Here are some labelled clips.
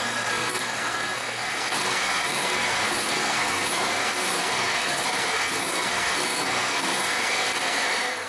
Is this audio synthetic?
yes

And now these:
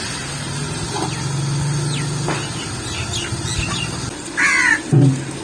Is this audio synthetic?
no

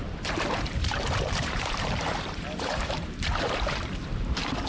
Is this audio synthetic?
yes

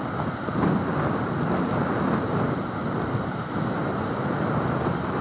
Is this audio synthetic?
no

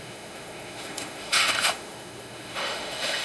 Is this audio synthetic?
yes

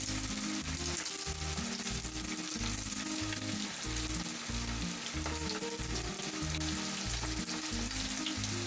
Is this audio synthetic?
no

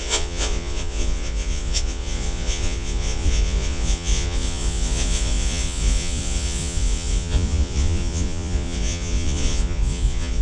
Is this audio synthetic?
yes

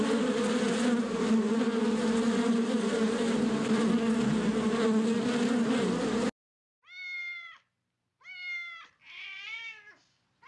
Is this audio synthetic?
no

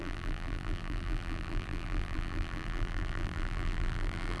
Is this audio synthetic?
yes